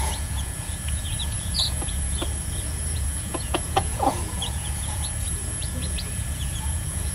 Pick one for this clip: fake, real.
fake